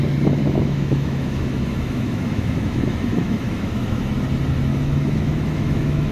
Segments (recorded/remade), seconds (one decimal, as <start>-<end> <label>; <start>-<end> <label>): 0.0-0.4 recorded; 0.4-4.1 remade; 4.1-4.7 recorded; 4.7-6.1 remade